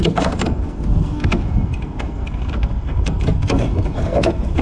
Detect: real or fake fake